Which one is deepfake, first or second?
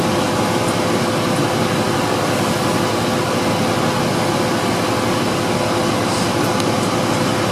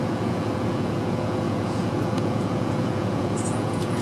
second